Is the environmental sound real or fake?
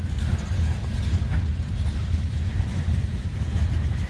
real